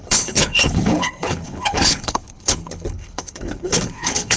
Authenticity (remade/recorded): remade